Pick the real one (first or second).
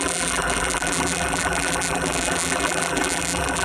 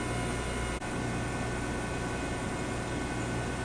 second